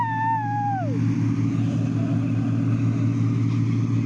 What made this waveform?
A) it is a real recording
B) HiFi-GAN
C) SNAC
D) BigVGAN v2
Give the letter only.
A